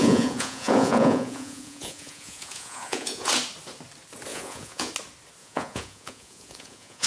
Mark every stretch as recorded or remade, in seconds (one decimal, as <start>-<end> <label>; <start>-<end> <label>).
0.0-3.3 remade; 3.3-4.3 recorded; 4.3-4.9 remade; 4.9-5.4 recorded; 5.4-7.1 remade